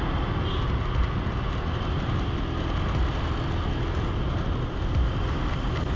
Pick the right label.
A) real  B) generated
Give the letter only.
A